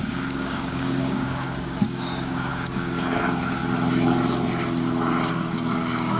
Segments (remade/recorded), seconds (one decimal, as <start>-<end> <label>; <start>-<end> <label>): 0.0-3.6 remade; 3.6-5.3 recorded; 5.3-6.2 remade